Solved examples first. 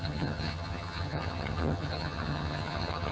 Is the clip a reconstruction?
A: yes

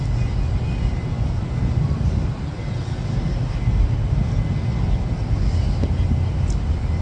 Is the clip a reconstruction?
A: no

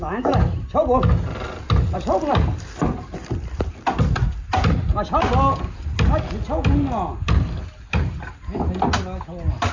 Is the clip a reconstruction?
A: no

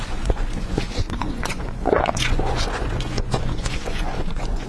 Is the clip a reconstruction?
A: yes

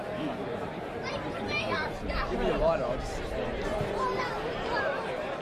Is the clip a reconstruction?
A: yes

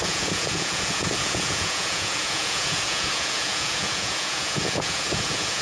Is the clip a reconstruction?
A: yes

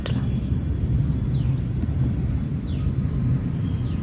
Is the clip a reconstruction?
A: no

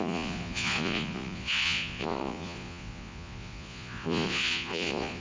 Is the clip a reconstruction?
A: yes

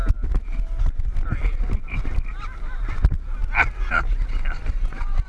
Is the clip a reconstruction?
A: no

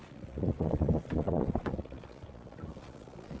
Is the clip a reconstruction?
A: yes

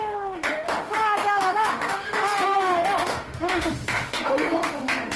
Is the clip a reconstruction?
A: yes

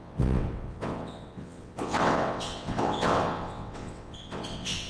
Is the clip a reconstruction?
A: yes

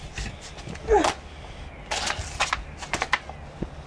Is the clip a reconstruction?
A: no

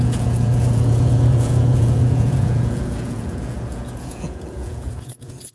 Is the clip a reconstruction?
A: yes